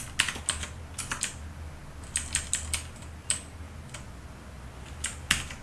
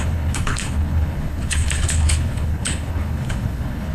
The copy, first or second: second